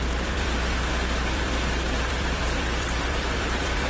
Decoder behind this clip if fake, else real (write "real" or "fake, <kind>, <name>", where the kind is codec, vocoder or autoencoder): fake, vocoder, BigVGAN v2